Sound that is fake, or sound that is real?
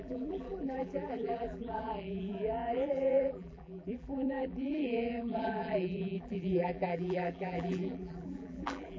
fake